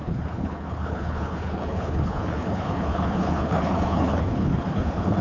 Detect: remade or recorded remade